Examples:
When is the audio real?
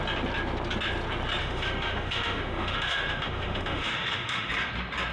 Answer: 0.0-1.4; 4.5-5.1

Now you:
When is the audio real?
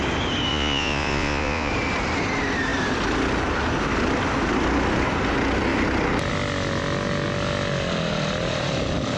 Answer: 0.0-0.5; 1.7-9.2